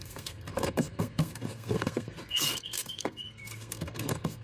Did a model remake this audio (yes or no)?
yes